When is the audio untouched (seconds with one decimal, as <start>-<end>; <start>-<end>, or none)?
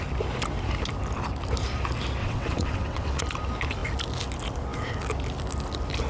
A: 0.0-2.2; 3.2-6.1